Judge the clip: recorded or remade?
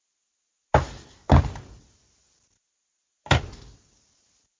recorded